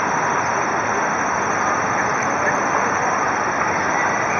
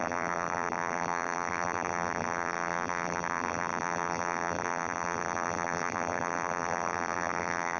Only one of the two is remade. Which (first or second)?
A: second